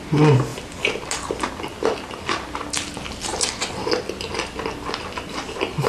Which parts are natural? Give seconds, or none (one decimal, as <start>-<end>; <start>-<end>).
0.0-5.9